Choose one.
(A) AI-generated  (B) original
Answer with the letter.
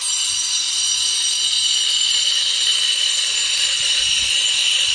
B